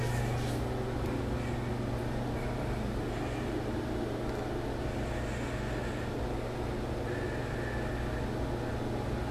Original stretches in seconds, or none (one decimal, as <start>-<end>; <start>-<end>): 0.0-2.0; 4.2-5.8; 7.7-9.3